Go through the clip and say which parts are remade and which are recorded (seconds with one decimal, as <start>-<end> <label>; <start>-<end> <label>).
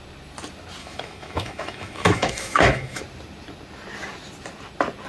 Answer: 0.0-0.8 recorded; 0.8-3.0 remade; 3.0-5.1 recorded